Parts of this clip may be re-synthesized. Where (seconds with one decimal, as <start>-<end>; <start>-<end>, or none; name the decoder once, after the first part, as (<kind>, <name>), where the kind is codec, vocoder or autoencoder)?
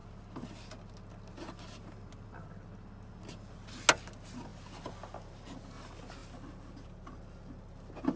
none